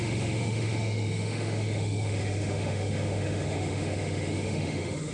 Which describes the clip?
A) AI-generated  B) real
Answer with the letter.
A